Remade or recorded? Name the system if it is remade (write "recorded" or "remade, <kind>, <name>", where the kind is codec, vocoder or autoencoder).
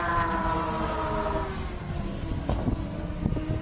recorded